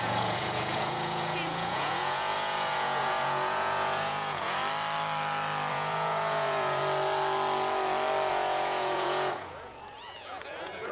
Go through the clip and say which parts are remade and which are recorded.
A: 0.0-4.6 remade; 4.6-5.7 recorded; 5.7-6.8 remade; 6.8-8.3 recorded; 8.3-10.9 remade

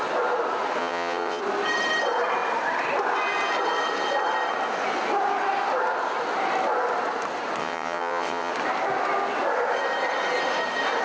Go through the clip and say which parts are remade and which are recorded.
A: 0.0-0.8 recorded; 0.8-1.4 remade; 1.4-7.6 recorded; 7.6-8.5 remade; 8.5-11.0 recorded

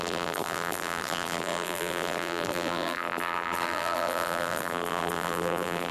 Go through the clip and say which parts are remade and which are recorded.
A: 0.0-5.9 remade

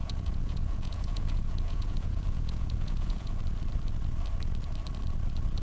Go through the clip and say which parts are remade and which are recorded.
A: 0.0-3.4 remade; 3.4-5.6 recorded